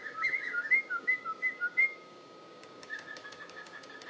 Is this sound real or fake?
fake